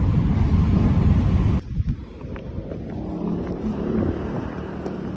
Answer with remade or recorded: recorded